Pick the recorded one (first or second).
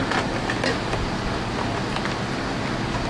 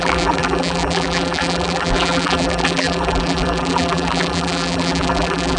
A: first